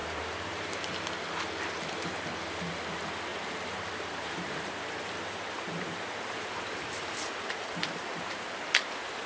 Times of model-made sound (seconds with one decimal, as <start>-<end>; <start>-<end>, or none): 0.0-1.0; 3.3-8.5